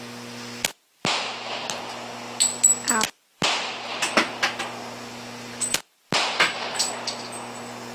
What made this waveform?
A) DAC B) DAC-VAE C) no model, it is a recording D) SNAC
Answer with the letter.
C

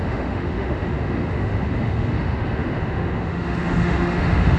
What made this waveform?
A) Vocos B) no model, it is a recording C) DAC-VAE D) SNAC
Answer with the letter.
C